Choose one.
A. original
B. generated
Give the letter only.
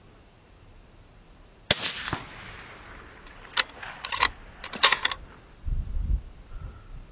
A